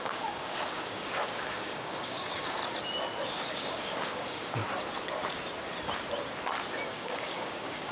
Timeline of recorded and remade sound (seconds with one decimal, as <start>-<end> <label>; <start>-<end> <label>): 0.0-2.6 remade; 2.6-3.5 recorded; 3.5-4.6 remade; 4.6-6.9 recorded; 6.9-7.9 remade